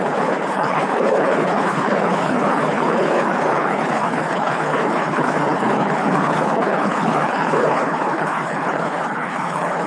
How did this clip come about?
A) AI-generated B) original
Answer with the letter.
A